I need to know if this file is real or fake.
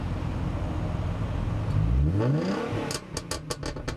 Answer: real